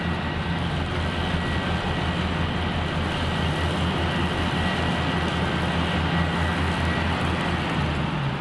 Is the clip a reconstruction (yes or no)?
no